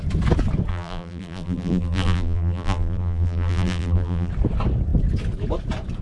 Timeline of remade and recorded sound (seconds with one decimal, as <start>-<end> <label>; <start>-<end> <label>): 0.0-0.7 recorded; 0.7-4.3 remade; 4.3-6.0 recorded